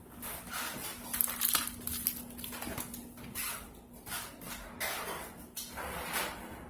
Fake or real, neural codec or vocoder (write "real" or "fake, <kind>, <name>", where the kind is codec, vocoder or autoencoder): real